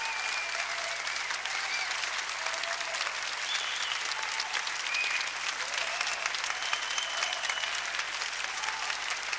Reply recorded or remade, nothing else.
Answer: recorded